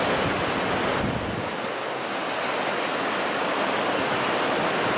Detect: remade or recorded recorded